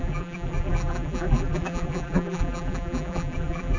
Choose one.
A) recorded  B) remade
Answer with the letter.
B